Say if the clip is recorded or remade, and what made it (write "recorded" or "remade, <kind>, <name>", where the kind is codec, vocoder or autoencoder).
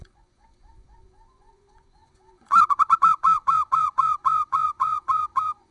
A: remade, vocoder, Vocos